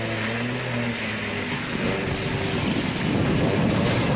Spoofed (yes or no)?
no